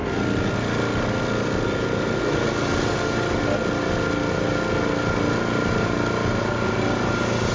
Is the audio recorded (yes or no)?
yes